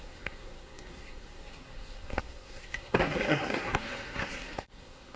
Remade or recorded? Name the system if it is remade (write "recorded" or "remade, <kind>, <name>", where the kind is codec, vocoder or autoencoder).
remade, codec, SNAC